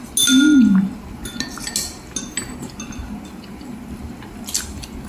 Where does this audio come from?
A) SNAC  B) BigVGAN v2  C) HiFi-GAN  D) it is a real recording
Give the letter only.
D